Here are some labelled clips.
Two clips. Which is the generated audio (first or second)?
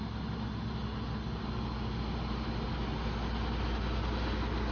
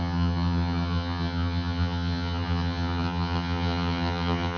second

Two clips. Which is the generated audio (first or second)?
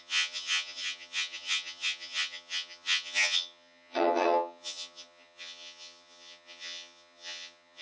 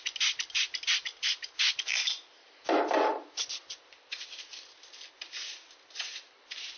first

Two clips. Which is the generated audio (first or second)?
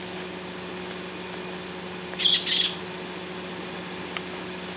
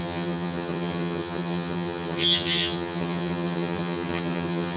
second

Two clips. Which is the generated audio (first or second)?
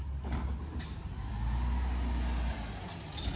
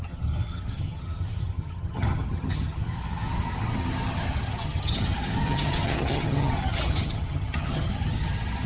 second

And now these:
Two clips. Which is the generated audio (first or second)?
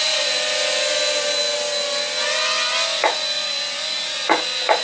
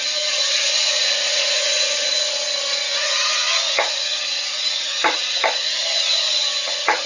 second